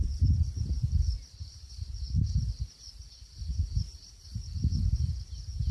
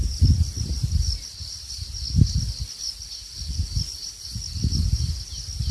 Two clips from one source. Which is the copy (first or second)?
first